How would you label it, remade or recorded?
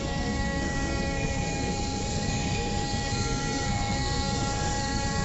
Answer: remade